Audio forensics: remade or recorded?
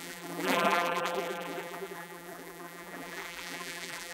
remade